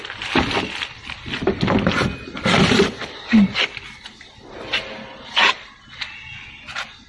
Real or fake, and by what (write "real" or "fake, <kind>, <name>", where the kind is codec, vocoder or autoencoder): real